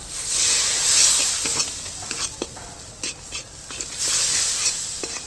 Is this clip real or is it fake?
real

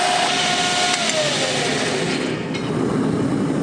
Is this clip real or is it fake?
real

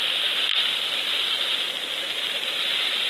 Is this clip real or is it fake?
real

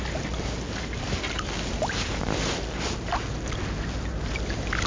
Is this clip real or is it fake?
real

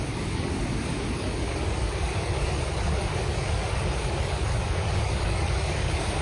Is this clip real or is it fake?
fake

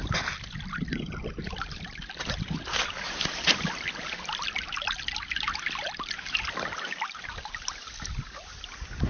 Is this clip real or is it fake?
real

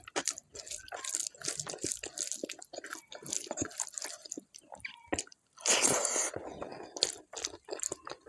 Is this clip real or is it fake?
real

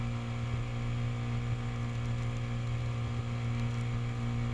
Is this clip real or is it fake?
real